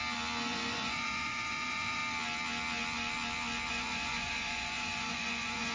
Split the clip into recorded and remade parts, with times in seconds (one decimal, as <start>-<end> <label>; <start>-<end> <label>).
0.0-0.5 recorded; 0.5-2.0 remade; 2.0-3.7 recorded; 3.7-5.7 remade